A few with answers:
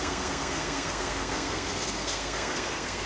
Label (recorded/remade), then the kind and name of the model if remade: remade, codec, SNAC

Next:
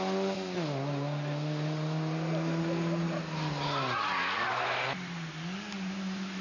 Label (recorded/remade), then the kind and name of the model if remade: recorded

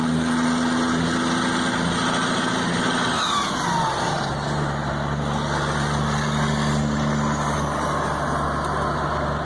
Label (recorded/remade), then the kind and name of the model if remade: recorded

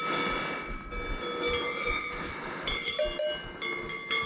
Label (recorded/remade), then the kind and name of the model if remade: recorded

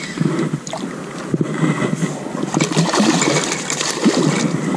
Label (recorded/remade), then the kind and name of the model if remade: recorded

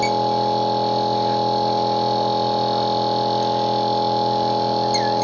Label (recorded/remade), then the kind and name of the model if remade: recorded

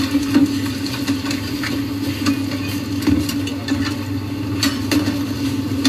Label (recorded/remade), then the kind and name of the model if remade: recorded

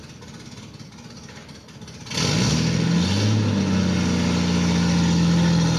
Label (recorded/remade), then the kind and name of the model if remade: recorded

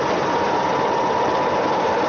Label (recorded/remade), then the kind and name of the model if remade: recorded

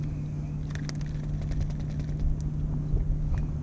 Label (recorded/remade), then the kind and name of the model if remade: recorded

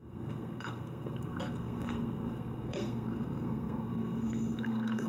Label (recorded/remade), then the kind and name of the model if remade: remade, codec, SNAC